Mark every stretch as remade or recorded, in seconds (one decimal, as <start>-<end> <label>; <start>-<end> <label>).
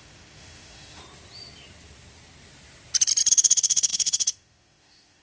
0.0-1.0 remade; 1.0-3.3 recorded; 3.3-5.2 remade